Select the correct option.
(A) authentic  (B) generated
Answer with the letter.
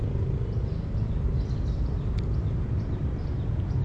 A